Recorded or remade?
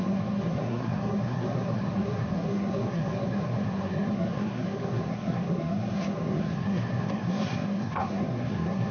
remade